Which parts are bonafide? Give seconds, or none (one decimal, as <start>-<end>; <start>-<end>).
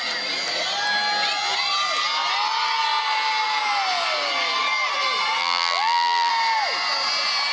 0.0-5.4; 6.3-7.5